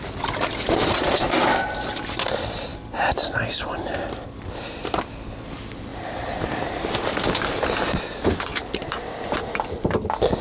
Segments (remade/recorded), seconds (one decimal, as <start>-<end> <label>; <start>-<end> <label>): 0.0-2.7 recorded; 2.7-5.1 remade; 5.1-5.9 recorded; 5.9-7.1 remade; 7.1-8.5 recorded; 8.5-9.7 remade; 9.7-10.4 recorded